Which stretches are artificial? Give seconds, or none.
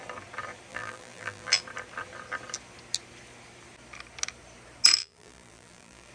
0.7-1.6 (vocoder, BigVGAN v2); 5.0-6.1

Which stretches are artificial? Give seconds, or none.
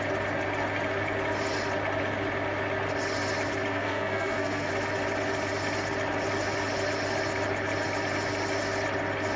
3.7-4.7 (codec, SNAC)